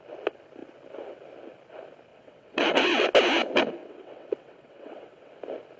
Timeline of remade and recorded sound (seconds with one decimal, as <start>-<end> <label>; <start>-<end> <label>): 0.0-2.1 recorded; 2.1-3.1 remade; 3.1-3.8 recorded; 3.8-5.3 remade; 5.3-5.8 recorded